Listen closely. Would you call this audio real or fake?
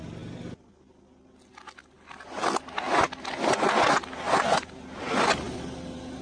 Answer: real